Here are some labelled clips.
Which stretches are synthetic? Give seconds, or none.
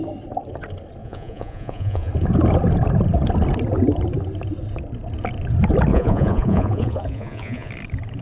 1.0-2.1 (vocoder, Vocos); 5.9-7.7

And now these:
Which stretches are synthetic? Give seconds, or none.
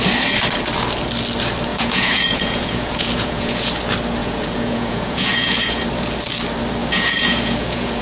1.7-3.7 (vocoder, Vocos); 4.2-5.8; 6.8-8.0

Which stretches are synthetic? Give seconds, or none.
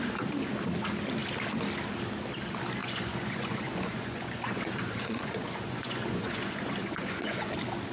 2.8-7.5 (vocoder, Vocos)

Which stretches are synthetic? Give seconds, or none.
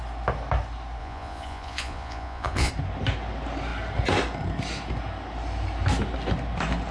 1.0-2.7 (vocoder, Vocos)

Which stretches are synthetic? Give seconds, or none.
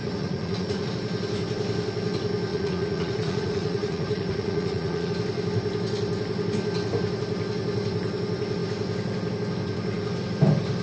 0.0-0.9 (vocoder, Vocos); 2.5-5.1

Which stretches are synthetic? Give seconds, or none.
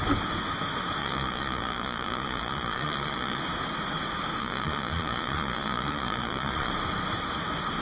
1.0-3.4 (vocoder, Vocos); 4.4-6.7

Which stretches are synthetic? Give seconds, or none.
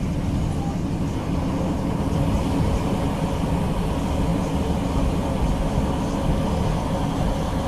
none